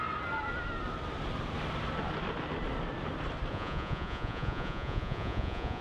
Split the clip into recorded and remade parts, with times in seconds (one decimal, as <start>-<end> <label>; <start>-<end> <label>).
0.0-3.5 recorded; 3.5-5.8 remade